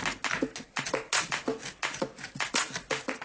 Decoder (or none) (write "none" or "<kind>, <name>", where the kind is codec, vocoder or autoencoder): none